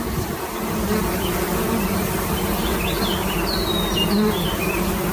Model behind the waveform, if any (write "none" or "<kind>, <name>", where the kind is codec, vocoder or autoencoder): none